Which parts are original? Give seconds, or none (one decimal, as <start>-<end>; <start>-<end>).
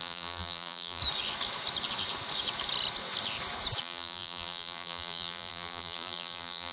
1.0-3.8